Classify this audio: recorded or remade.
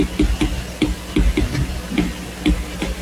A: recorded